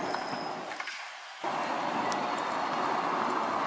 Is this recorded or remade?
recorded